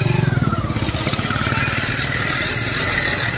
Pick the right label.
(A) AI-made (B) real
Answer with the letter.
B